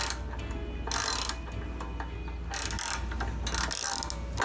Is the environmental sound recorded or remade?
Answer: recorded